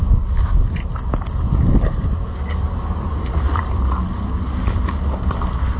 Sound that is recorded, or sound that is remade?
recorded